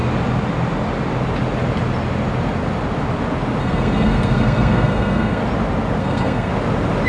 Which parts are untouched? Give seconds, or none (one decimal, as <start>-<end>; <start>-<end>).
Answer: 0.0-3.6; 5.4-6.0; 6.5-7.1